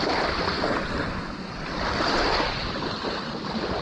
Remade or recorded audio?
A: recorded